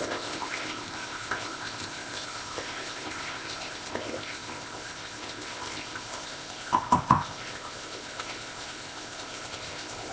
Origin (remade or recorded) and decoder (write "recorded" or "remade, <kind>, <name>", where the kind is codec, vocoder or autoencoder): remade, codec, ZipCodec